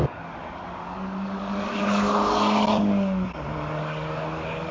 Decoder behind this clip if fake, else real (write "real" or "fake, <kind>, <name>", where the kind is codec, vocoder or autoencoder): fake, codec, DAC